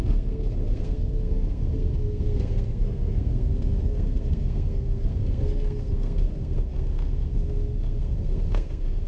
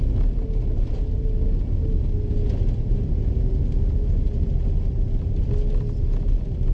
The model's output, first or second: first